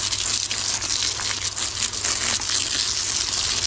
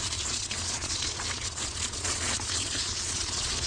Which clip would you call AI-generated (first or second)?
second